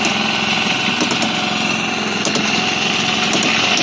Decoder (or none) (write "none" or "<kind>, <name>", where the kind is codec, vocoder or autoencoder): none